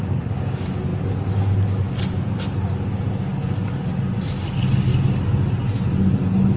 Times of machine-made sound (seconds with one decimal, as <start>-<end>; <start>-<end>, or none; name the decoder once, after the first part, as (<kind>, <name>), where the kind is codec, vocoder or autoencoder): none